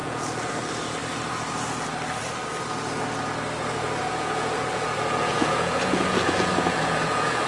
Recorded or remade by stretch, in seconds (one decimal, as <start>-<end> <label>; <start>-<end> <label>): 0.0-0.5 remade; 0.5-4.0 recorded; 4.0-7.5 remade